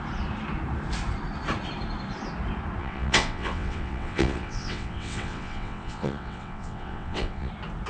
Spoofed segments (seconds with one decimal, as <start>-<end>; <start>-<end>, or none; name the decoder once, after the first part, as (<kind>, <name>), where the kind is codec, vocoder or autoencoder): 2.8-7.5 (vocoder, WaveNeXt)